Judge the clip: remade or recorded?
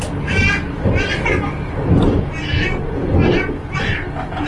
recorded